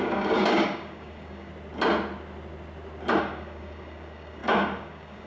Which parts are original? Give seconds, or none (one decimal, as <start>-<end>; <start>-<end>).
1.5-3.2